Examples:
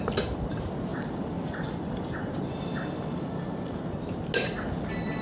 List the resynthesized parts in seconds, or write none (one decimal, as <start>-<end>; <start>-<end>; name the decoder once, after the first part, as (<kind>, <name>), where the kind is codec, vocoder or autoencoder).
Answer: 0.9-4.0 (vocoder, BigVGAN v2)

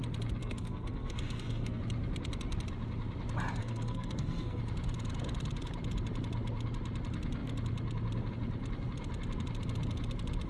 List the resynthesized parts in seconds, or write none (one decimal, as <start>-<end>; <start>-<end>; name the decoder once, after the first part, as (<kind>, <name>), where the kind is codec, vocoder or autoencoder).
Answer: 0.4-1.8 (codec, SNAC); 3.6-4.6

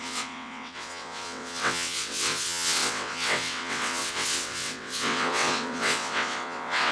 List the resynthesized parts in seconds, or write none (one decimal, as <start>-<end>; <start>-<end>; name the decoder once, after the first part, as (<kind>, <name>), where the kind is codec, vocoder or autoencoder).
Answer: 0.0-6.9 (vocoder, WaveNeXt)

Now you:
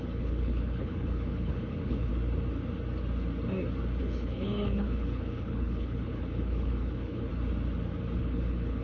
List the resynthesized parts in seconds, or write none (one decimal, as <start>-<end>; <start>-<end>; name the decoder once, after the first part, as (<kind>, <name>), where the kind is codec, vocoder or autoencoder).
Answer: 0.0-2.1 (codec, HILCodec); 4.0-7.3; 8.2-8.8

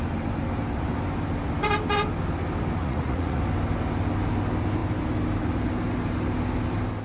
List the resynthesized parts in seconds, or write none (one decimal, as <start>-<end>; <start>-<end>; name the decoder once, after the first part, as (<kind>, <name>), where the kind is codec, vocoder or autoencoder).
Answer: 2.8-3.4 (vocoder, Vocos)

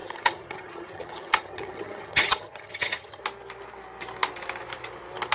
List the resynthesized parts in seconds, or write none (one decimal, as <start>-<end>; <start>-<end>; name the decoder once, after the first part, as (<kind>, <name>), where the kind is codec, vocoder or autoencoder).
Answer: 0.0-3.2 (vocoder, HiFi-GAN)

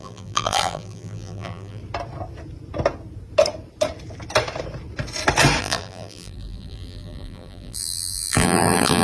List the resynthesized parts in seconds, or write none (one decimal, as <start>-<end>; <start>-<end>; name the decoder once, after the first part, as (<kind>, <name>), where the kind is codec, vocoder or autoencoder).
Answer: 0.0-1.8 (vocoder, BigVGAN v2); 5.6-9.0

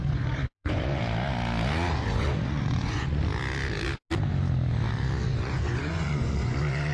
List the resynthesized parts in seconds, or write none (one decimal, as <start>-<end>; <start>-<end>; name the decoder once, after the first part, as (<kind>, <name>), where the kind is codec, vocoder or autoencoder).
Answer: 0.0-1.0 (vocoder, Vocos); 1.9-3.2; 5.4-6.9